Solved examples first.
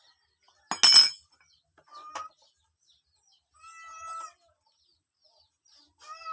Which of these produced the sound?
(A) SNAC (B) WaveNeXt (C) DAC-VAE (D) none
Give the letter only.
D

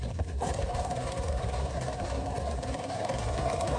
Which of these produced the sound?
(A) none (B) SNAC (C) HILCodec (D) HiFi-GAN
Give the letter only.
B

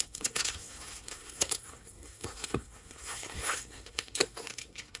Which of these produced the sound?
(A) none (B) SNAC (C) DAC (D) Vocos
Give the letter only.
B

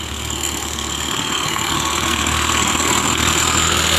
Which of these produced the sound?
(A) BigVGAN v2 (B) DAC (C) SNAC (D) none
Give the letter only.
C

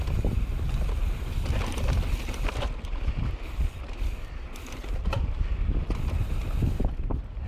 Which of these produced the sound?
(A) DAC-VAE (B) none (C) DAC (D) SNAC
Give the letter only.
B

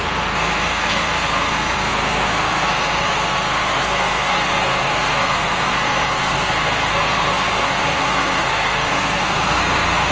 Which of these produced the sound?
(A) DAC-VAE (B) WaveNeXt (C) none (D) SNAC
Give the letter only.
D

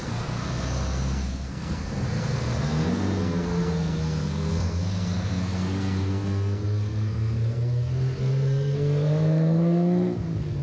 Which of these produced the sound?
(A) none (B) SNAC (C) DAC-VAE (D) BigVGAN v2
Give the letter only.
B